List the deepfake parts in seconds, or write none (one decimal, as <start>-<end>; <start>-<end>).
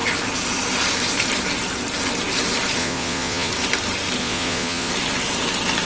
2.8-3.5; 4.2-4.9